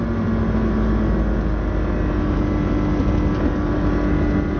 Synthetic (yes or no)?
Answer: no